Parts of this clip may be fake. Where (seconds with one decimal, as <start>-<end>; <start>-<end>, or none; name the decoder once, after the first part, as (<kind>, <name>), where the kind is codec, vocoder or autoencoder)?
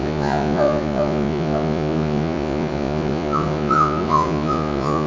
0.0-5.1 (vocoder, Vocos)